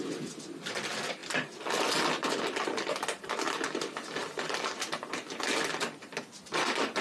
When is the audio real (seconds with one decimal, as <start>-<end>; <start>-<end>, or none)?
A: 0.0-7.0